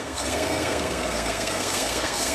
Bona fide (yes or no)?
no